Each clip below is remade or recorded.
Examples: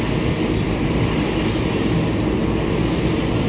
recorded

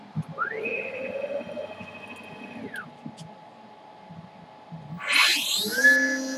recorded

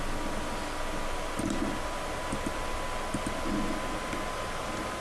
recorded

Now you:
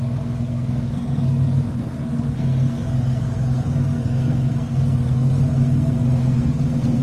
remade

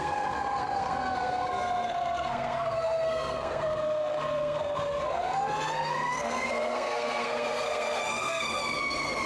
remade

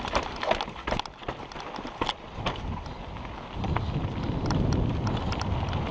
recorded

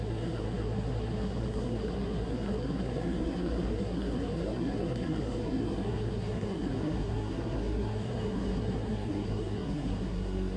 remade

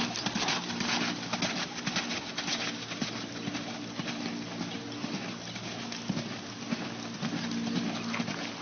recorded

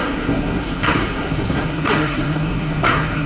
remade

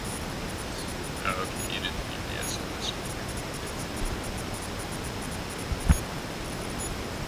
recorded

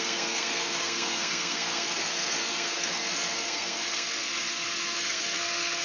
remade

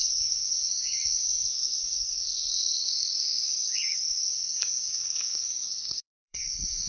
remade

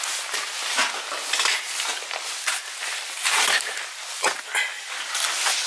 recorded